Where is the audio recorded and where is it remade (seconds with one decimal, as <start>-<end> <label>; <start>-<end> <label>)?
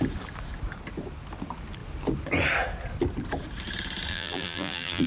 0.0-4.1 recorded; 4.1-5.1 remade